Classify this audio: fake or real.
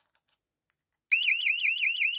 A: real